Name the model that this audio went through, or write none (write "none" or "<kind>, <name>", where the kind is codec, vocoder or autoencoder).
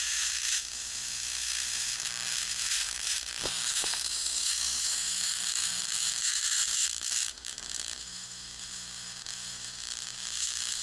autoencoder, DAC-VAE